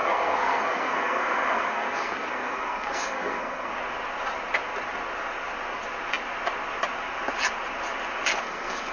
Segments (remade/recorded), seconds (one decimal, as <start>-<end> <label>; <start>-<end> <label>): 0.0-3.7 remade; 3.7-8.4 recorded; 8.4-8.9 remade